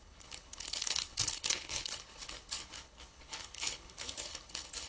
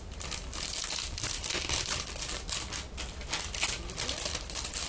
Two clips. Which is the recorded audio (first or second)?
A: second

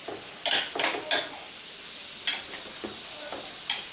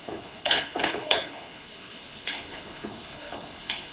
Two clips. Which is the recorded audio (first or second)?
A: first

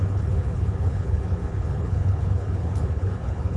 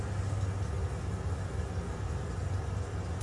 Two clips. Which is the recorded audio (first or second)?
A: second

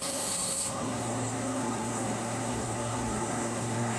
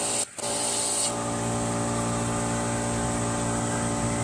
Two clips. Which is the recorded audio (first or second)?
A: second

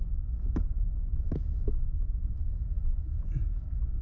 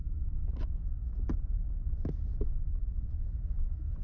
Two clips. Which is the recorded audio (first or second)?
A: second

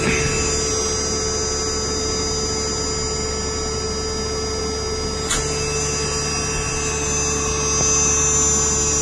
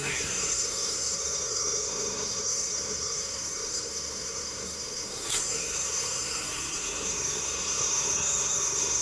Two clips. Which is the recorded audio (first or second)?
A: first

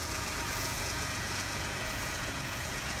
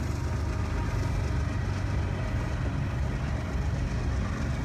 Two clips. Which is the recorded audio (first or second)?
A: second